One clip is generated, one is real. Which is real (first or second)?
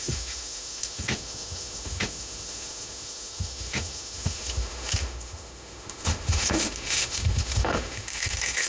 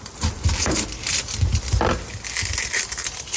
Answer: second